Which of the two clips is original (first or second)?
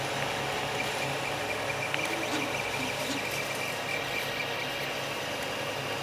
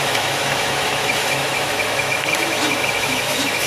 first